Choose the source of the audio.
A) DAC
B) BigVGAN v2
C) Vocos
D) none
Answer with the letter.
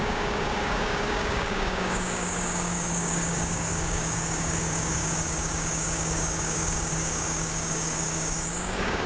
A